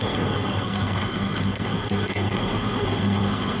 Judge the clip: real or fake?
fake